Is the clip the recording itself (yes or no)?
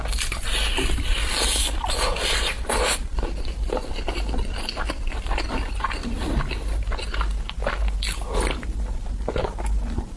yes